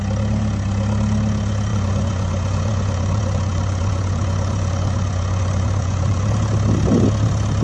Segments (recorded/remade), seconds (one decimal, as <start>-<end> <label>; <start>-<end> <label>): 0.0-1.7 recorded; 1.7-6.3 remade; 6.3-7.6 recorded